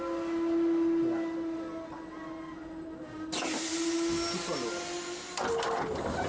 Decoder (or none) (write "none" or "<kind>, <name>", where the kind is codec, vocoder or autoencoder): none